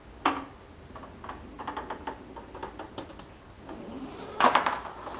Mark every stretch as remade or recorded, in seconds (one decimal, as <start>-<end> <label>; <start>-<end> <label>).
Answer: 0.0-5.2 recorded